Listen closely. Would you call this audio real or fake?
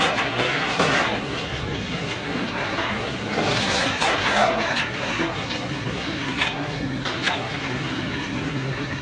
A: fake